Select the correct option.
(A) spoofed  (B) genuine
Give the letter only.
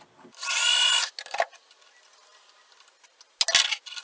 B